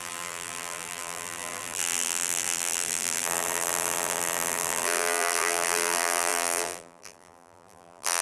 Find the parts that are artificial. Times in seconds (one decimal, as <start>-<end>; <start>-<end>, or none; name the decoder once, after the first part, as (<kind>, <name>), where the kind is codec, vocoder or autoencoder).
0.0-8.2 (vocoder, BigVGAN v2)